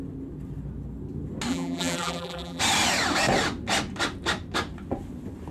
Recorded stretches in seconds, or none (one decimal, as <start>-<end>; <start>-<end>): 0.0-1.5; 2.6-5.5